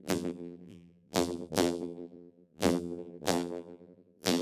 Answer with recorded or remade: remade